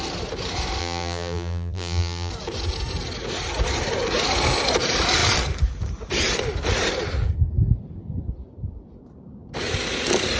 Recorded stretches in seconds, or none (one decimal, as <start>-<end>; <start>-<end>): 0.0-0.8; 2.3-10.4